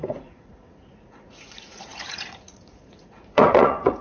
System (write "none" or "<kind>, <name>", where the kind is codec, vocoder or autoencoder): vocoder, Vocos